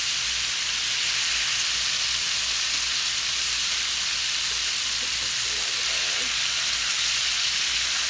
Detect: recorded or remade recorded